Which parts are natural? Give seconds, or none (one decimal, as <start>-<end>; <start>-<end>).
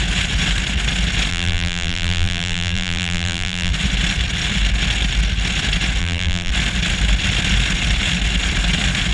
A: 0.0-1.3; 3.7-6.0; 6.5-9.1